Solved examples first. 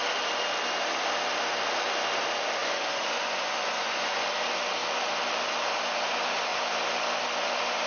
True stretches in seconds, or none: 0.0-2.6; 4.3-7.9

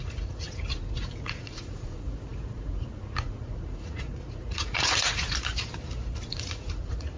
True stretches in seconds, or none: 5.5-6.3

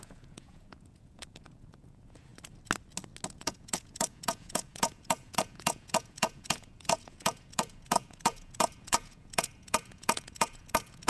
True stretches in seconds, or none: 2.3-3.3

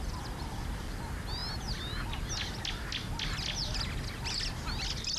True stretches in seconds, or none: 0.0-5.2

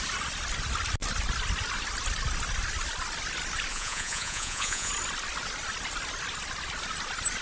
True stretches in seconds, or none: 0.0-3.7; 4.9-7.4

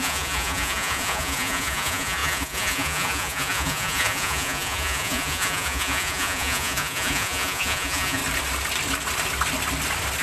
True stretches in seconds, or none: 8.2-10.2

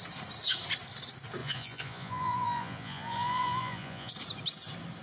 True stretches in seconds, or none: 0.0-1.4; 4.1-5.0

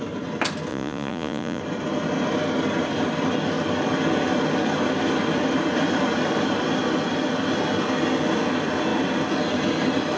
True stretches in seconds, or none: 0.0-0.7; 1.6-10.2